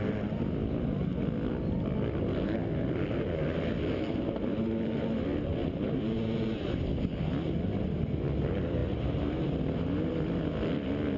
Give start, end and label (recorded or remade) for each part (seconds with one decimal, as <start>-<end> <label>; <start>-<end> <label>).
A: 0.0-5.6 recorded; 5.6-6.8 remade; 6.8-11.2 recorded